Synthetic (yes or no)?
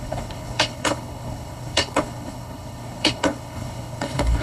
yes